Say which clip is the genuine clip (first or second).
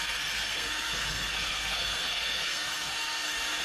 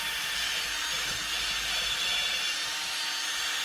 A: second